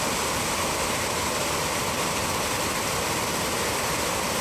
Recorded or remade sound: recorded